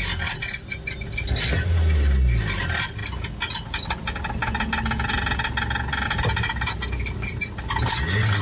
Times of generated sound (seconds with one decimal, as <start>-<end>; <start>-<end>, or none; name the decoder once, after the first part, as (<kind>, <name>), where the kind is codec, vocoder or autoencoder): none